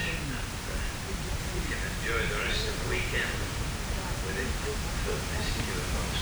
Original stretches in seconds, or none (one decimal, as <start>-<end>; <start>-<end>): 1.4-2.1; 2.7-3.5; 4.1-6.2